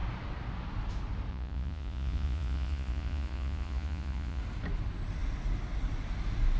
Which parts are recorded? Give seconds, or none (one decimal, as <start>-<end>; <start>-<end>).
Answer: 0.0-1.3; 4.4-6.6